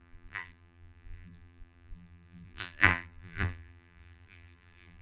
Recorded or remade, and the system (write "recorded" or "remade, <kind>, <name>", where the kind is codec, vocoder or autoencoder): remade, vocoder, BigVGAN v2